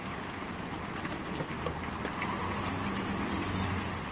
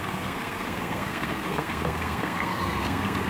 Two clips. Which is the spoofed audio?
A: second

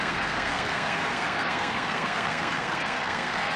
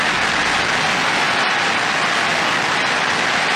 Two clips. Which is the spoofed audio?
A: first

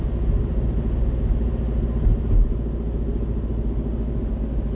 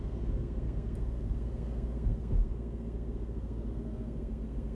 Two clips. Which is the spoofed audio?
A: second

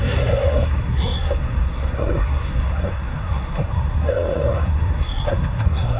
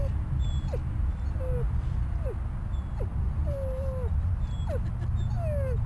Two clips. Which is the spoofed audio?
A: first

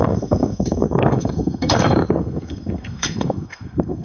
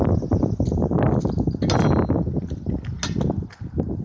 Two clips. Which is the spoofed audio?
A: first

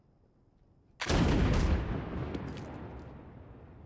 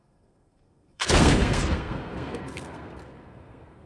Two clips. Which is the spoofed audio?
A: second